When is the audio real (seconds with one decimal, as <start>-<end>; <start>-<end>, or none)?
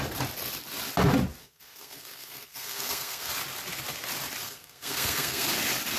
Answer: 0.0-1.4; 3.3-4.4; 5.5-6.0